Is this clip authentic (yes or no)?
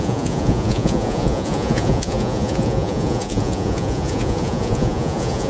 no